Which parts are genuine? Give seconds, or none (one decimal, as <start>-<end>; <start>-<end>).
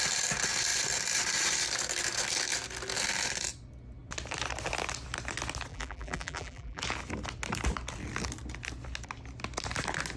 0.0-5.7; 6.8-10.2